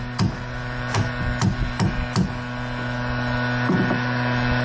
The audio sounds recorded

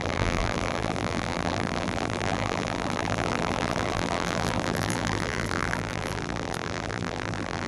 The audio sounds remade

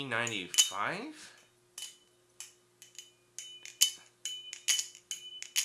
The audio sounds recorded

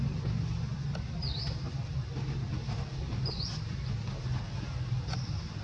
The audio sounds recorded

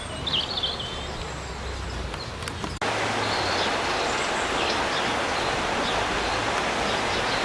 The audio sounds recorded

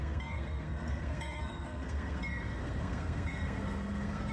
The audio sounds remade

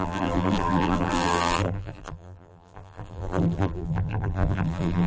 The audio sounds remade